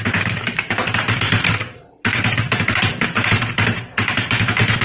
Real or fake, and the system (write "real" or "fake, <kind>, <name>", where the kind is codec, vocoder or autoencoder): fake, vocoder, BigVGAN v2